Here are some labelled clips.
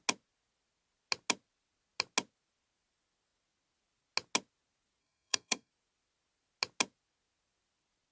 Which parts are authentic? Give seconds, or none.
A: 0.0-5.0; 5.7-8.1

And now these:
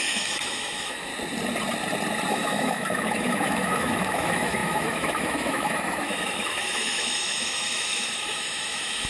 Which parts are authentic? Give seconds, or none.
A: 1.1-2.3

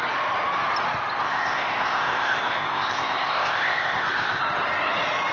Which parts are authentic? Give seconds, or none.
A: 0.0-1.2; 4.4-5.3

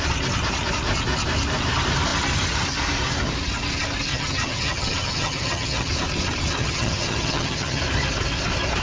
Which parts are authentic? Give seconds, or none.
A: 0.0-4.1; 5.9-6.6; 7.8-8.8

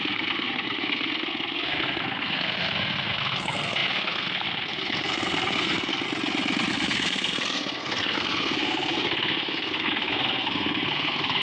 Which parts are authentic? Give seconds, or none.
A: 5.9-6.7

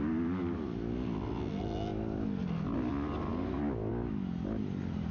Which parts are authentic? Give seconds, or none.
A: 0.0-5.1

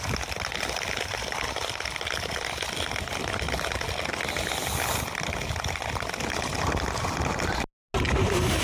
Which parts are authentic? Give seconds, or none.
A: 0.0-8.6